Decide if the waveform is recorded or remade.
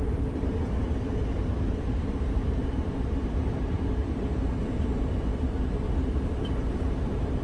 remade